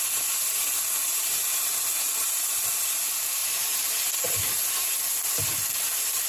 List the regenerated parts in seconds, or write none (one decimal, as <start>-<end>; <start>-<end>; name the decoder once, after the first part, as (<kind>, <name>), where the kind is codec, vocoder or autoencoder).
1.1-2.1 (vocoder, BigVGAN v2); 3.4-5.0